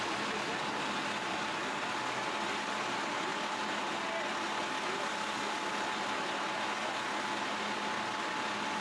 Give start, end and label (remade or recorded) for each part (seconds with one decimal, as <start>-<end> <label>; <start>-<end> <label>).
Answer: 0.0-8.8 recorded